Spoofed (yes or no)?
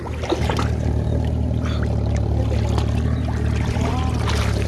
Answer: no